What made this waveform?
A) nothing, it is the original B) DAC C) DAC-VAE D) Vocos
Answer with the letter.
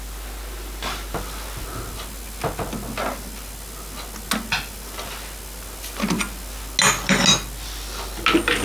A